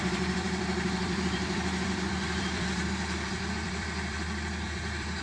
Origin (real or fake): fake